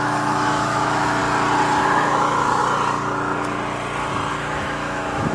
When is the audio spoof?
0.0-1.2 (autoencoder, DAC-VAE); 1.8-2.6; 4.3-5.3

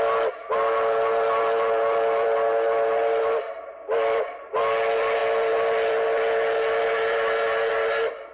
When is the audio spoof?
none

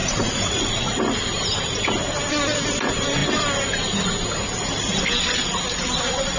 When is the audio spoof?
0.0-1.0 (vocoder, Vocos)

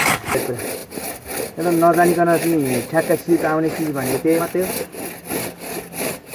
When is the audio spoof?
none

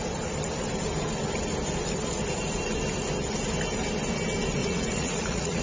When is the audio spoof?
4.6-5.6 (vocoder, Vocos)